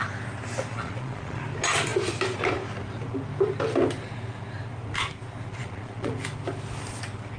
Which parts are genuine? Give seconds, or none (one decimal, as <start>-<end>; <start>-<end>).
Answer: 0.0-0.7; 1.4-5.5; 6.1-7.4